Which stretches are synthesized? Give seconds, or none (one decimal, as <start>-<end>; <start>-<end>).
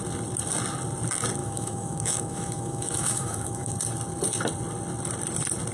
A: 1.4-3.7